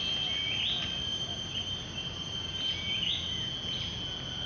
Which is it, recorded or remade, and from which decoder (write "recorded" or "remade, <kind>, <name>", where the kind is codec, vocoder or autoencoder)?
recorded